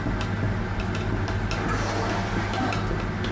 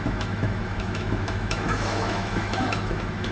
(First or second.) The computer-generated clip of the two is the second